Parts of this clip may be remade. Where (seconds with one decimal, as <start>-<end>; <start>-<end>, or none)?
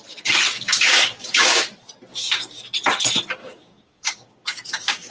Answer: 0.5-1.6; 2.1-2.6; 3.4-5.1